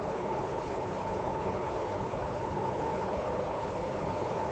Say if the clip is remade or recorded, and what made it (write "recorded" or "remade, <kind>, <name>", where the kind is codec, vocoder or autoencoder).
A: remade, codec, HILCodec